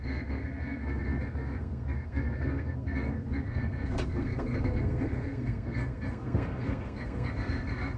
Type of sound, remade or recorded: remade